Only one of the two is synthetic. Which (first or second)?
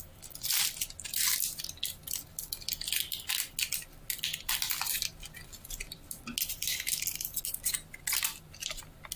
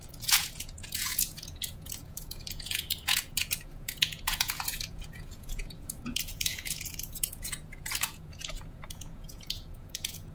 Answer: second